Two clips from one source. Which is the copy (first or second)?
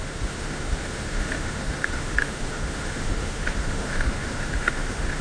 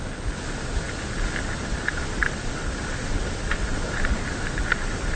first